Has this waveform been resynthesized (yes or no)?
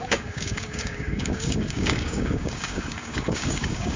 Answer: yes